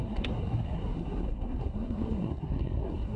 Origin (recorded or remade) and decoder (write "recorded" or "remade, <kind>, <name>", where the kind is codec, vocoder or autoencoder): remade, codec, SNAC